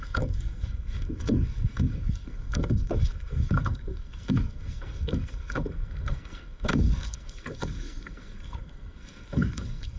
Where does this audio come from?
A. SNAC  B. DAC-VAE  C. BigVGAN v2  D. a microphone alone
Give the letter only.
A